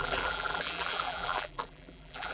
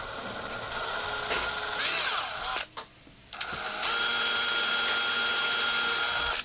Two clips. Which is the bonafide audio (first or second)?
second